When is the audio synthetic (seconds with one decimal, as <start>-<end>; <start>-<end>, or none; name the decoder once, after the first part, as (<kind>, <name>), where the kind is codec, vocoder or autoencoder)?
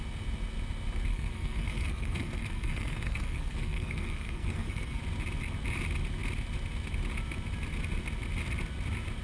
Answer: 1.1-5.0 (codec, SNAC)